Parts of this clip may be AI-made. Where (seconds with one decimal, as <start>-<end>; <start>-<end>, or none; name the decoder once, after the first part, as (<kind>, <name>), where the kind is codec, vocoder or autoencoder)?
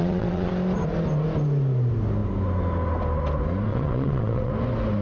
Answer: 0.0-0.5 (vocoder, WaveNeXt); 3.7-4.5